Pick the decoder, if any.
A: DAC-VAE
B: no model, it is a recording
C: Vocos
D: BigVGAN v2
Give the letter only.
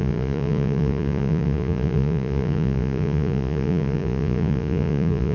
C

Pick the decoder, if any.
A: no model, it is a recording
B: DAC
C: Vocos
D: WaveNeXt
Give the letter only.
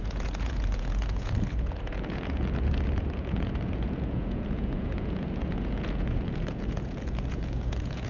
C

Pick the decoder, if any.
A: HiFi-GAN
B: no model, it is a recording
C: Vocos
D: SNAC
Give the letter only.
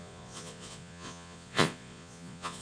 C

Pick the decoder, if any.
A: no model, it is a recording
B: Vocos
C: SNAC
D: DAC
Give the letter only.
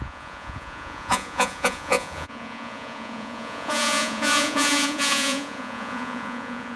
B